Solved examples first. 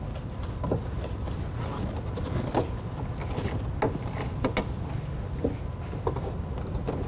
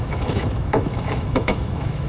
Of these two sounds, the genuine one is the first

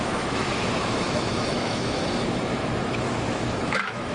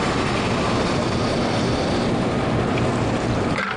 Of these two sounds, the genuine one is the second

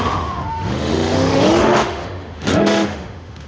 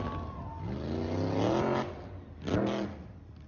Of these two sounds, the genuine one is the second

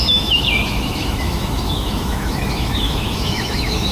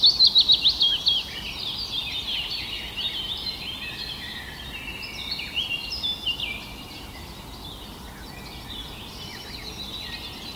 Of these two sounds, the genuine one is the second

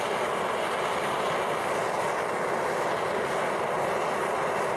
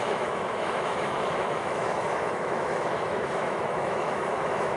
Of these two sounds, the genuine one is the first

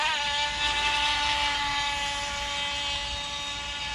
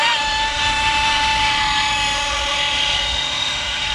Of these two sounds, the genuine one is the first